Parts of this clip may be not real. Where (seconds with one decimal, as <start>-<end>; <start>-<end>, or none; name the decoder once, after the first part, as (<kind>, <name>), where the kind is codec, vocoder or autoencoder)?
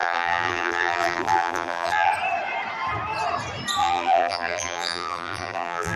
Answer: 0.0-2.1 (vocoder, BigVGAN v2); 3.8-6.0